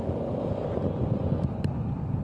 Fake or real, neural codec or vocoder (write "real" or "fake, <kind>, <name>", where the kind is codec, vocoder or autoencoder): real